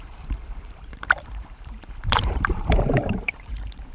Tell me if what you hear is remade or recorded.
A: remade